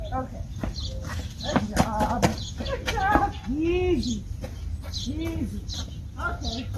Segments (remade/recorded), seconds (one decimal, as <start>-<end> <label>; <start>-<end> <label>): 0.0-6.8 recorded